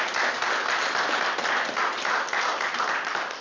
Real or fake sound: real